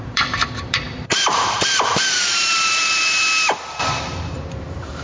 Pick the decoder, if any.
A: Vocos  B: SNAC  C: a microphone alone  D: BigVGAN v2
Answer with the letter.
D